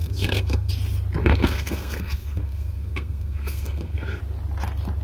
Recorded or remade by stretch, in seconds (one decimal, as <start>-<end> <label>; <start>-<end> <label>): 0.0-0.7 remade; 0.7-1.2 recorded; 1.2-4.2 remade; 4.2-5.0 recorded